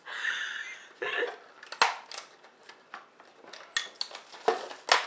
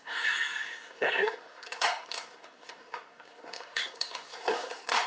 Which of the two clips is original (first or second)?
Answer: first